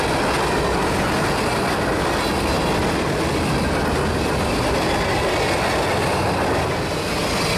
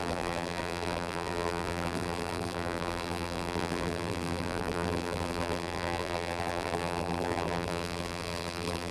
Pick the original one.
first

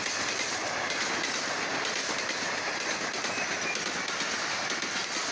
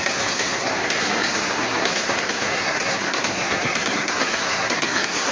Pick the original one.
first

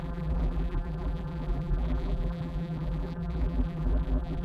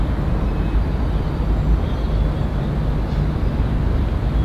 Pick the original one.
second